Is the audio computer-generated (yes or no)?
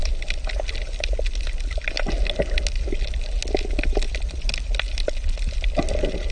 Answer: no